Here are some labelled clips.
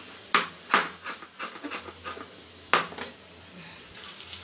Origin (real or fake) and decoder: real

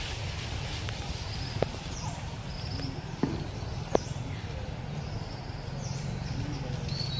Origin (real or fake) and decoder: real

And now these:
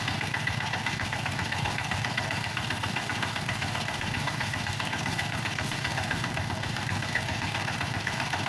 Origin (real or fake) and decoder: fake, codec, DAC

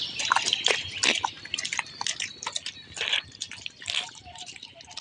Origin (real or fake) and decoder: real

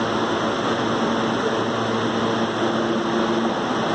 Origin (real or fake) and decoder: real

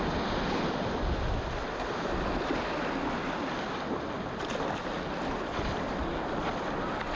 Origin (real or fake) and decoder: real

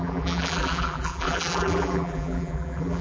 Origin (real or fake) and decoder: fake, vocoder, BigVGAN v2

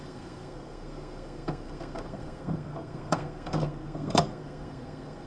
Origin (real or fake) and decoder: fake, codec, SNAC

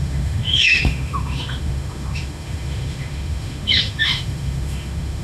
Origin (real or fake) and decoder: fake, autoencoder, DAC-VAE